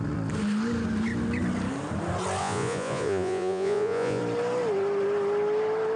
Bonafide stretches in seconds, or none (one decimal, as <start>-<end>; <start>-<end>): 0.0-2.4; 4.2-6.0